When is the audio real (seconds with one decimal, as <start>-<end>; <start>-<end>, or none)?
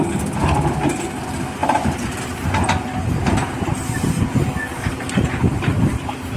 0.0-1.6; 2.2-4.7; 5.6-6.4